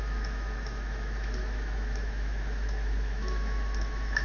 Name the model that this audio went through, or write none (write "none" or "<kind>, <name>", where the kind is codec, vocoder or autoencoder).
autoencoder, DAC-VAE